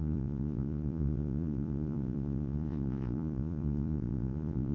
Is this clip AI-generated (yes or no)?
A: yes